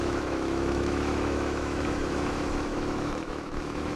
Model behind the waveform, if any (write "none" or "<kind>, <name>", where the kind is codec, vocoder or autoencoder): autoencoder, DAC-VAE